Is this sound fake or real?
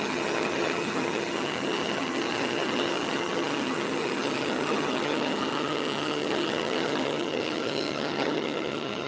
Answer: fake